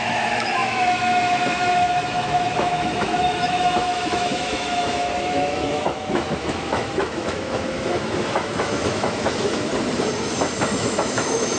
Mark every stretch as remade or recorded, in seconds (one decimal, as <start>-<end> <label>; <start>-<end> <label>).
0.0-9.7 remade; 9.7-10.8 recorded; 10.8-11.6 remade